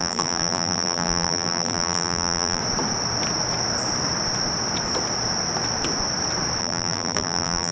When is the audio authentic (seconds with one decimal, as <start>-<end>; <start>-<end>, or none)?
2.6-6.6